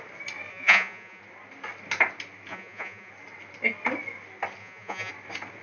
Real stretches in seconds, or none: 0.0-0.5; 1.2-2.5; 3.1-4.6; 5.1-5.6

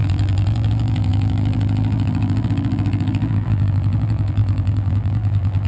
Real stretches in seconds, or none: none

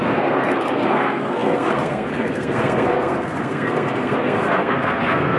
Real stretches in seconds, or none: none

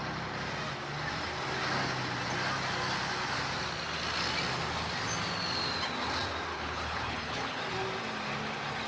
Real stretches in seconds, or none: 0.0-6.5; 7.6-8.9

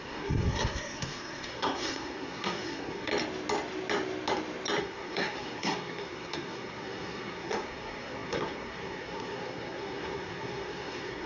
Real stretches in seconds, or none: 3.1-4.8